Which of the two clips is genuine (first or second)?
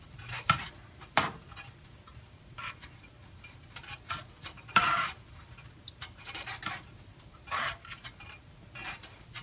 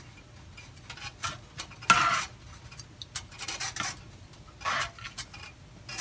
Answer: second